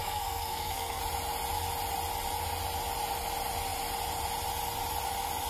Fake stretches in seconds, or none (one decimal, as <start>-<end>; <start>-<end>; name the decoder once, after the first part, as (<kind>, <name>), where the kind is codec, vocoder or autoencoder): 0.0-1.0 (codec, SNAC)